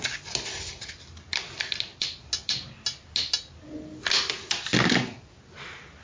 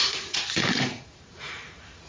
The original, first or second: first